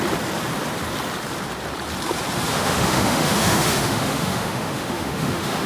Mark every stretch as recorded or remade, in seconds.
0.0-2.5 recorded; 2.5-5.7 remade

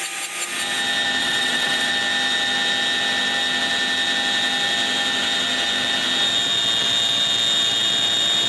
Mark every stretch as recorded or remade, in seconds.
0.0-1.2 recorded; 1.2-1.9 remade; 1.9-8.5 recorded

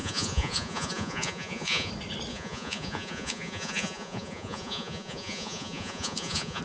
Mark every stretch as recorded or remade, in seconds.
0.0-1.9 remade; 1.9-2.3 recorded; 2.3-6.6 remade

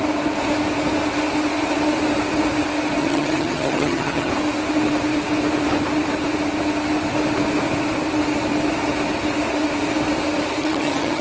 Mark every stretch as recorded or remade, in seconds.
0.0-3.0 recorded; 3.0-4.3 remade; 4.3-10.6 recorded; 10.6-11.2 remade